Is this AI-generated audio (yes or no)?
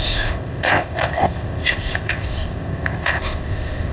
yes